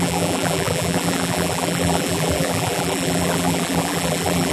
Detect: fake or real fake